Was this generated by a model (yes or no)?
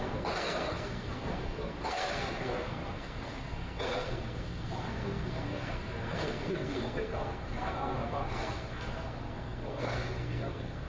yes